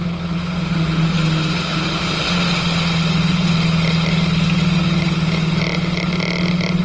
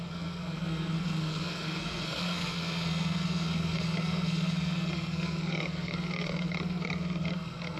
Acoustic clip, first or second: first